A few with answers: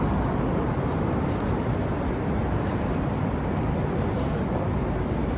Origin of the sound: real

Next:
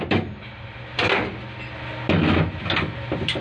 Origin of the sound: real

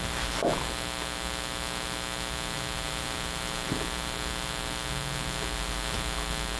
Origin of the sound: real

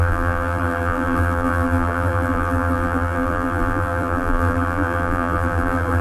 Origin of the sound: fake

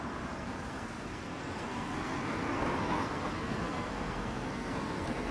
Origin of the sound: fake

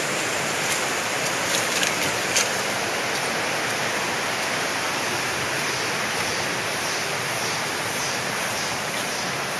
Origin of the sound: real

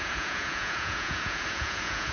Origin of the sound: fake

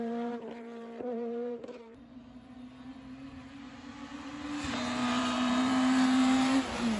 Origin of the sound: fake